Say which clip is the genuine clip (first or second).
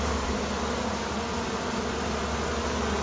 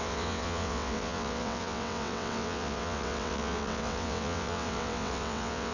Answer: first